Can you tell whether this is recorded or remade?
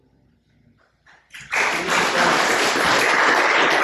recorded